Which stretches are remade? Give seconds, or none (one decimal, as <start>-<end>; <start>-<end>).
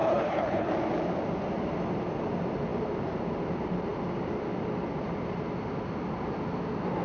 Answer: 0.0-0.7